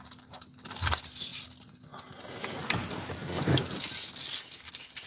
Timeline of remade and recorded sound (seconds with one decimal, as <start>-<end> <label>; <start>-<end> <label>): 0.0-5.1 recorded